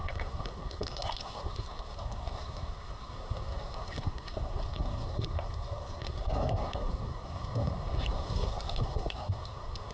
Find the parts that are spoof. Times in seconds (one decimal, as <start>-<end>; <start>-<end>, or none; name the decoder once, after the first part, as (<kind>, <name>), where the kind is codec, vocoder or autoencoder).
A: 0.0-9.9 (codec, SNAC)